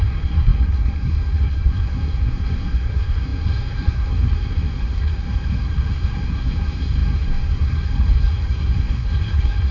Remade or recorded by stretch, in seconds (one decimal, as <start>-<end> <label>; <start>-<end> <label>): 0.0-9.7 remade